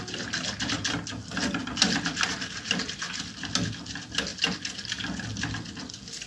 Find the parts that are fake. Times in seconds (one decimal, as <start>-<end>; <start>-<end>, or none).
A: none